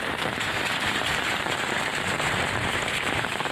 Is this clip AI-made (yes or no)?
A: yes